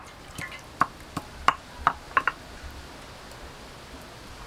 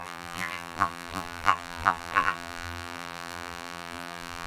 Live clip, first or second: first